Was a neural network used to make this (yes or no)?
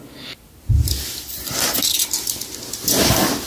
no